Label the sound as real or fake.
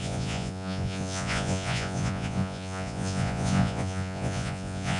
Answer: fake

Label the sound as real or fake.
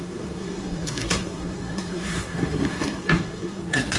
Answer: fake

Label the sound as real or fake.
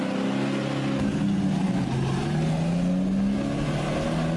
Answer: real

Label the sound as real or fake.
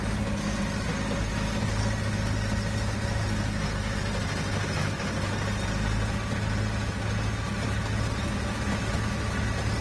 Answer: real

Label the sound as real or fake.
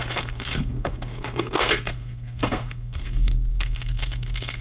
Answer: fake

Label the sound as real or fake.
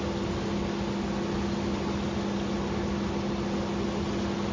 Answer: real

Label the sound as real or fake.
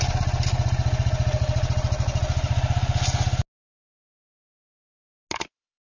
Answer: real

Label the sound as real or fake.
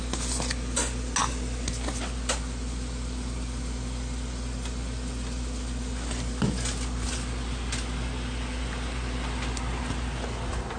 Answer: real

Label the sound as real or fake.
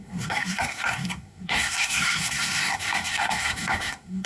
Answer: fake